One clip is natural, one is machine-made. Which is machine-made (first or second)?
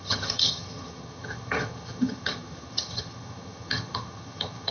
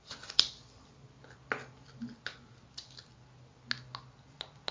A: first